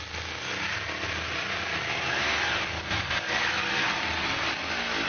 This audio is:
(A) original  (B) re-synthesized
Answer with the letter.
A